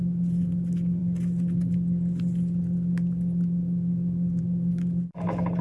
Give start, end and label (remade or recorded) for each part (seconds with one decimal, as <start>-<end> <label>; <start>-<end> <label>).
0.0-5.6 recorded